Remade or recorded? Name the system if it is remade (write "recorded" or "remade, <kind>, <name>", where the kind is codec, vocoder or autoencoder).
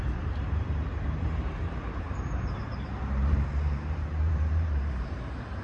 remade, vocoder, BigVGAN v2